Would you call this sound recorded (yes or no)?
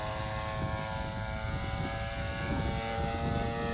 yes